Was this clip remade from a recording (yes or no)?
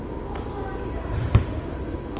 yes